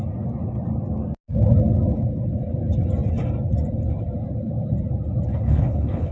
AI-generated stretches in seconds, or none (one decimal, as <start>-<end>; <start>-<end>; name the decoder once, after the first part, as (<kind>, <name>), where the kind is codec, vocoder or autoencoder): 5.3-6.1 (codec, HILCodec)